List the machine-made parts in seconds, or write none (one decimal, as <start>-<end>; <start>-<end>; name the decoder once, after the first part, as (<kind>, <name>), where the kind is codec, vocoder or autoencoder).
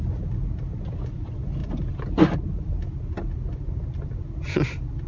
none